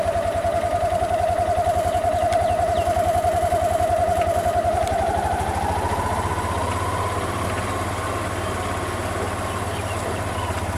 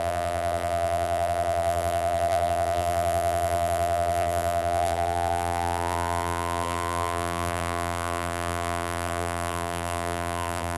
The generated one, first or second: second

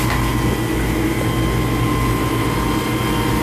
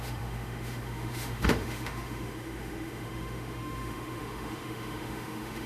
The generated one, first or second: second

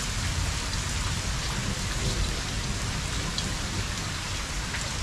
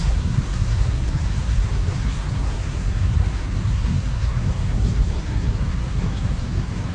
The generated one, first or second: second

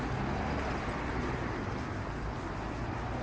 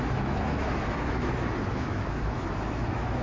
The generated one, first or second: second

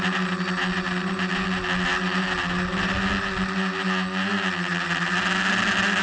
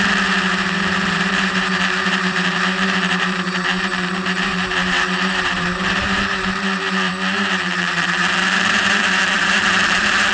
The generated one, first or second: second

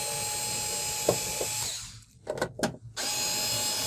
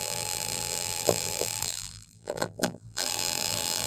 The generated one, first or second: second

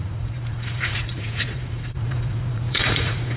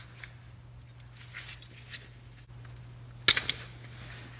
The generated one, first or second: first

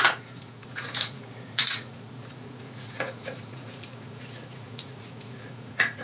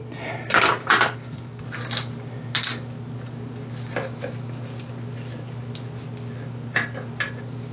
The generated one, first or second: first